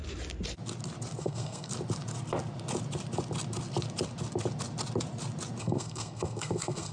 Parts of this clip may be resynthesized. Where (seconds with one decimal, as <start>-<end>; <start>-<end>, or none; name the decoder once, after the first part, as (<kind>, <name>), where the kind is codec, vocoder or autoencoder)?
1.2-1.7 (codec, SNAC); 5.6-6.9